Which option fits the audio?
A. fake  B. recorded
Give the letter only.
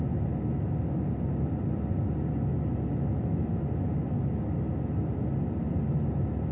B